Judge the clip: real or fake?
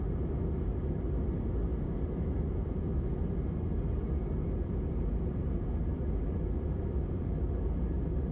real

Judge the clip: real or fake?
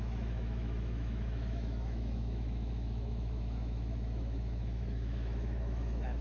fake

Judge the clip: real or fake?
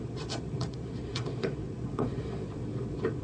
fake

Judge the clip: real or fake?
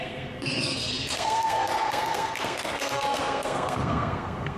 fake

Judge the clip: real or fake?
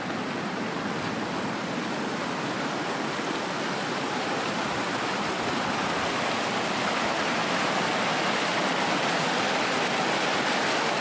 real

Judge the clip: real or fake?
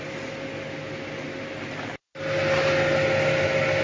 real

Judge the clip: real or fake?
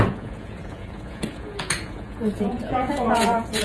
fake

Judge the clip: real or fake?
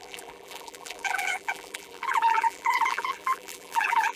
fake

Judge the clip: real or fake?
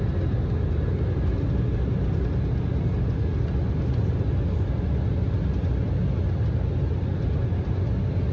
real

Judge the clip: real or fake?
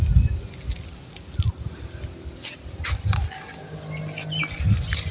real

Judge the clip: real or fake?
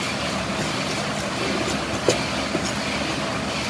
real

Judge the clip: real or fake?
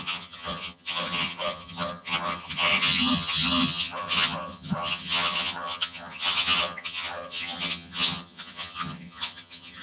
fake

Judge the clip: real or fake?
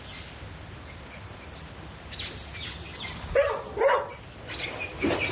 real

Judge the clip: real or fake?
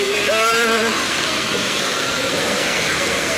fake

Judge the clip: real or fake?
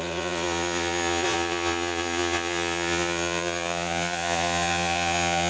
fake